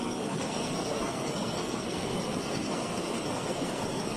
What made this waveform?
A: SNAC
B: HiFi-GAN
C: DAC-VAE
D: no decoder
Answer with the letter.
A